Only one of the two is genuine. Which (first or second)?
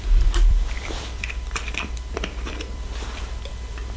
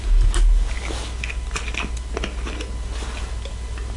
second